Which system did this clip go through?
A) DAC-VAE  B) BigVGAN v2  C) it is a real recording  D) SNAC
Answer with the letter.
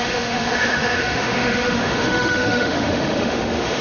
A